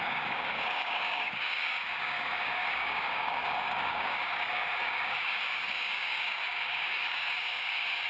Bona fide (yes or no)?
no